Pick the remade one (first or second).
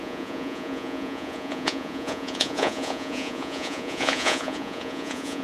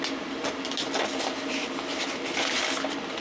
first